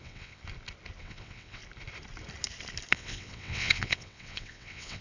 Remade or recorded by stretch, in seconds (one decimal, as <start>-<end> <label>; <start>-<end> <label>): 0.0-0.4 remade; 0.4-1.0 recorded; 1.0-1.6 remade; 1.6-2.9 recorded; 2.9-5.0 remade